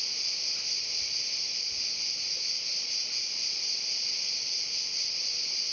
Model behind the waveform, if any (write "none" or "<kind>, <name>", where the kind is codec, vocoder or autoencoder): none